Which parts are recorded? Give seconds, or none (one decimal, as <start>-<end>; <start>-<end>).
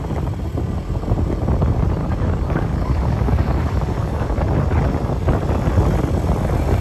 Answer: 0.0-2.0; 4.4-6.8